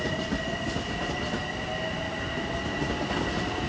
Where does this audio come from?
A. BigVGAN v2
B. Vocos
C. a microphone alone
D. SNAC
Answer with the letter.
C